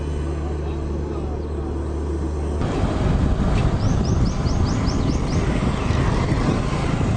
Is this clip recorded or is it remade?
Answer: recorded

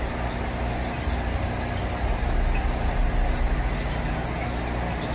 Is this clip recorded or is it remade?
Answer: recorded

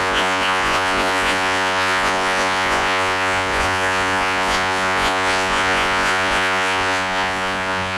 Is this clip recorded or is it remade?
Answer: remade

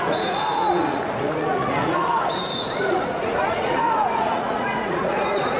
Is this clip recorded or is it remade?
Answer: remade